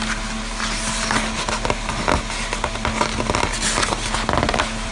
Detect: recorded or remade recorded